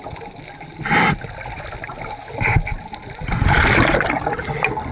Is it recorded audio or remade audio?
recorded